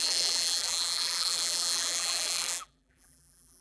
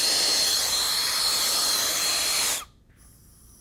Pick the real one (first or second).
second